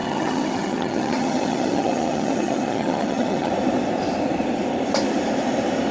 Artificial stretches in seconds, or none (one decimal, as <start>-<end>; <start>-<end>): 0.0-3.5